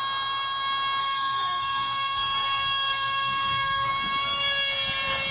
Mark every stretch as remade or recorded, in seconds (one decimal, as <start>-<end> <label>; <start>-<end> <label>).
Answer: 0.0-1.0 recorded; 1.0-3.9 remade; 3.9-5.3 recorded